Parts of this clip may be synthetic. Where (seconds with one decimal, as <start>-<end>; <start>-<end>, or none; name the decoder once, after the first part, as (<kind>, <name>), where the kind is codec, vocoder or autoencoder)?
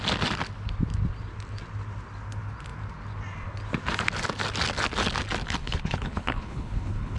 5.6-7.2 (codec, HILCodec)